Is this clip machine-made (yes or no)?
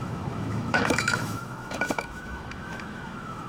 yes